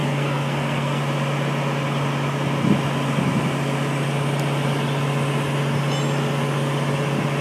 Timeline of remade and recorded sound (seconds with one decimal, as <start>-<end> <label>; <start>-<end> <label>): 0.0-1.0 remade; 1.0-7.4 recorded